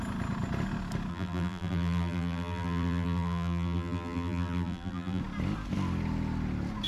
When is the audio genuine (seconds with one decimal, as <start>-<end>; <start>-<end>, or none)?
0.0-1.1; 5.2-6.9